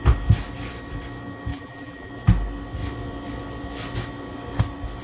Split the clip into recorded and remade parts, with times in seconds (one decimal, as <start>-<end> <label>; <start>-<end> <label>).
0.0-1.5 recorded; 1.5-2.1 remade; 2.1-5.0 recorded